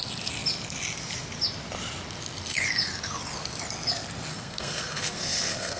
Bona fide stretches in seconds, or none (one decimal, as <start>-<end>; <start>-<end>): 0.0-4.3